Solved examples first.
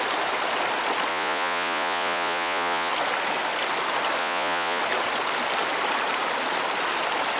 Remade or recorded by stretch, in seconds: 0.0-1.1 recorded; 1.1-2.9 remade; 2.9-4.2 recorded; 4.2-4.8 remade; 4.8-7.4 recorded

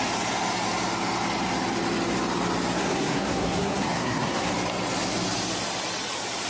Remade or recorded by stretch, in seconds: 0.0-2.8 recorded; 2.8-4.5 remade; 4.5-6.5 recorded

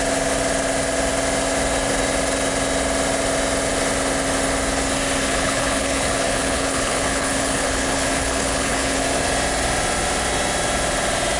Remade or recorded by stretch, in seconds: 0.0-5.2 recorded; 5.2-9.0 remade; 9.0-11.4 recorded

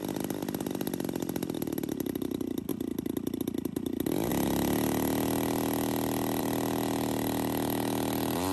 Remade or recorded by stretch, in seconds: 0.0-8.5 recorded

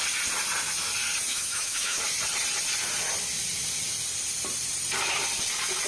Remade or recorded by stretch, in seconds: 0.0-1.3 recorded; 1.3-2.0 remade; 2.0-5.9 recorded